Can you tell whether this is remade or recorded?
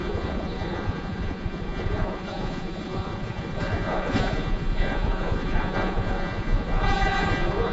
remade